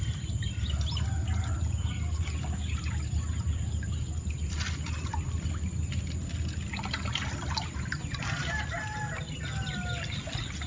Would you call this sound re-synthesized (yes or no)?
no